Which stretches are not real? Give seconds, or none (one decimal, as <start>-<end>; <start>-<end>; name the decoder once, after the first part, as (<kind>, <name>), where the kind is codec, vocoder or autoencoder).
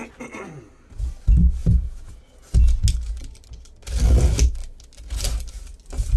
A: none